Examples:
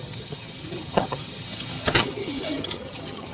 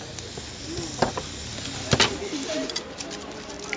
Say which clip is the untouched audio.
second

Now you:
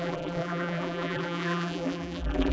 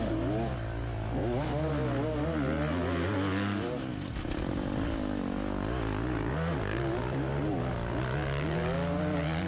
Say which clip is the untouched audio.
second